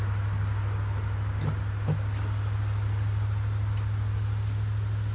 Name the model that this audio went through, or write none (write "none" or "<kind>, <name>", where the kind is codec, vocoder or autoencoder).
none